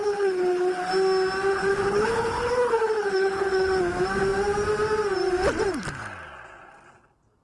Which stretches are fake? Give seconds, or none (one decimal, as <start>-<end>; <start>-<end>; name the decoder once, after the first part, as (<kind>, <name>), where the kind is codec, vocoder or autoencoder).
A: 0.0-0.9 (codec, HILCodec); 1.5-3.8